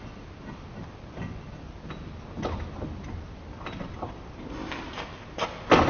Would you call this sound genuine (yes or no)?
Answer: yes